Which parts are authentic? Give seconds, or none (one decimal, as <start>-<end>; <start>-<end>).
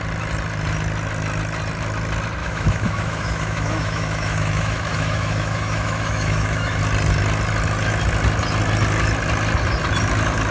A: 0.0-2.4; 6.8-10.5